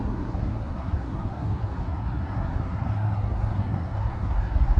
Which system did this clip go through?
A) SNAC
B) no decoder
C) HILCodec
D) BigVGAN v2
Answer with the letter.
A